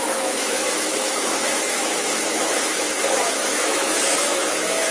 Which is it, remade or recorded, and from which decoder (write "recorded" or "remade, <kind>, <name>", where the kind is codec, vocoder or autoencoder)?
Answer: remade, autoencoder, DAC-VAE